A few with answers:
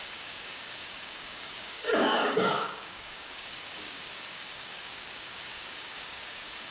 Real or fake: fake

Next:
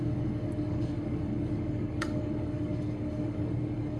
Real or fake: fake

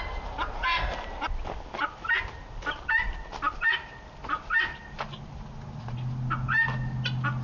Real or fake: real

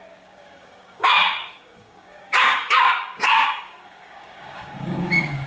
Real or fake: fake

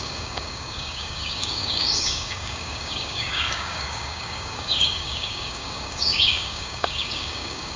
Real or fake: fake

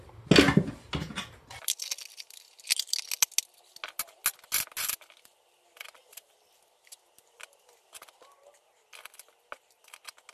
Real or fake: real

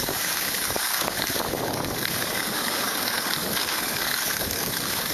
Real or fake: fake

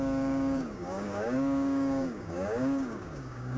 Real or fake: fake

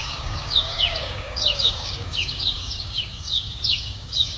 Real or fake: fake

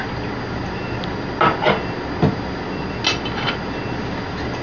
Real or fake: real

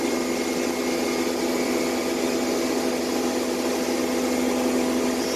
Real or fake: real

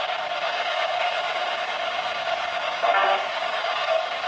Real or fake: fake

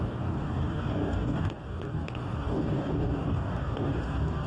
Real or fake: fake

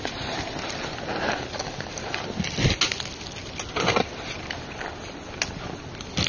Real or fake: real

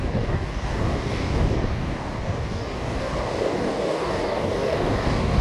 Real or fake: fake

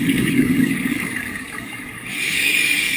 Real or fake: fake